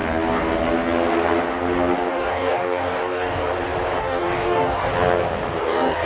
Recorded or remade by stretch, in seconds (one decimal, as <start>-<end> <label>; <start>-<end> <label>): 0.0-2.1 recorded; 2.1-3.4 remade; 3.4-4.0 recorded; 4.0-4.9 remade; 4.9-5.6 recorded; 5.6-6.1 remade